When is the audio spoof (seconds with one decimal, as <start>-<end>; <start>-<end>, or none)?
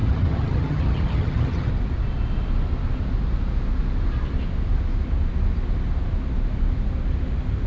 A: 0.0-1.7